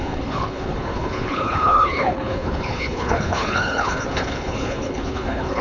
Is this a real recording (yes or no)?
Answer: no